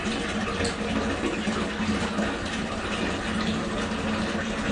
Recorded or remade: recorded